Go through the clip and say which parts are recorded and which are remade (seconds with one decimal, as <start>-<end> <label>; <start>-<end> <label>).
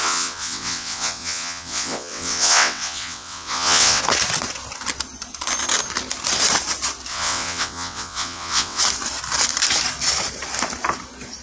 0.0-4.0 remade; 4.0-7.1 recorded; 7.1-8.8 remade; 8.8-11.4 recorded